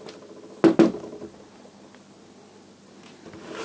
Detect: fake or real real